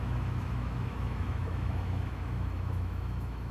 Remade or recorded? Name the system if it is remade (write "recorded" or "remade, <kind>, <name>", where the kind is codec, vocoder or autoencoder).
remade, autoencoder, DAC-VAE